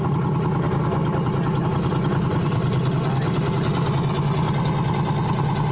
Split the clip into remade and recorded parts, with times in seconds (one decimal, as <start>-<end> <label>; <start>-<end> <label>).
0.0-5.7 recorded